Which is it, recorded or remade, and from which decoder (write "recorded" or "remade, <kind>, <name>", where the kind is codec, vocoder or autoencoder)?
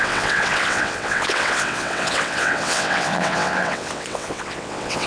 remade, vocoder, WaveNeXt